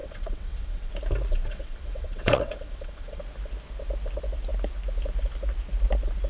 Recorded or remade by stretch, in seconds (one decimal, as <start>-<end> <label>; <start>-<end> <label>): 0.0-0.9 remade; 0.9-1.3 recorded; 1.3-3.2 remade; 3.2-6.3 recorded